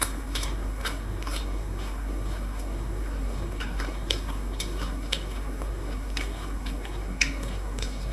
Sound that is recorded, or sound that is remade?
remade